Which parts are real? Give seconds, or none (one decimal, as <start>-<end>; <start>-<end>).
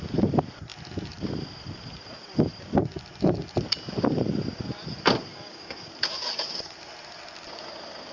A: 0.0-5.3; 5.9-8.1